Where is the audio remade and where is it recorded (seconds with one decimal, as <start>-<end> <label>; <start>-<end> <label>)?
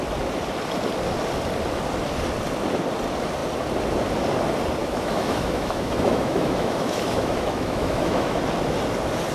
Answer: 0.0-4.8 recorded; 4.8-8.4 remade; 8.4-9.3 recorded